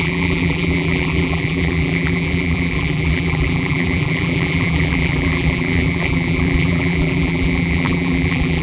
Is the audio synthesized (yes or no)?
yes